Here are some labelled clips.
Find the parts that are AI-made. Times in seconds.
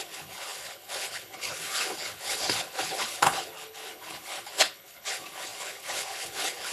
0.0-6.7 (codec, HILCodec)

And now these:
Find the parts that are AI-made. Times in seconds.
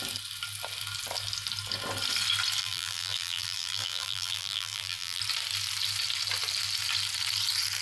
2.6-5.2 (vocoder, BigVGAN v2)